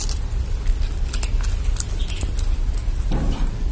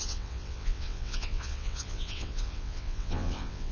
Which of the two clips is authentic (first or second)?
first